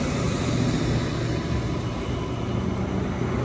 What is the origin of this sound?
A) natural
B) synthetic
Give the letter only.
A